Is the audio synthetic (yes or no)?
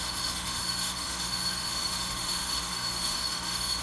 yes